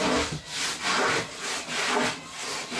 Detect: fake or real real